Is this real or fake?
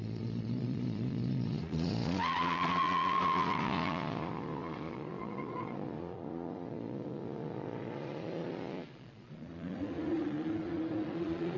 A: fake